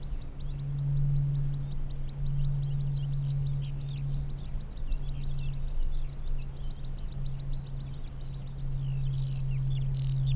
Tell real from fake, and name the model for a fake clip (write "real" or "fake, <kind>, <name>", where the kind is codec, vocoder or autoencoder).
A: real